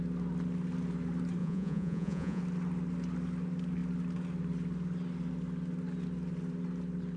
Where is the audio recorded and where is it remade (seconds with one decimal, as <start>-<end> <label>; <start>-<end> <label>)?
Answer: 0.0-1.4 recorded; 1.4-2.4 remade; 2.4-7.2 recorded